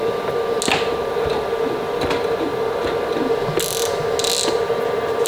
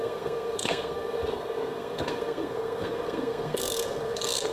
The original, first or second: first